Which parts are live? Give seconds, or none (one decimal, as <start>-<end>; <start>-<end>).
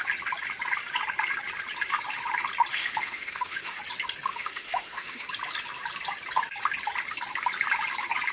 0.0-2.7; 3.8-4.3; 5.3-8.3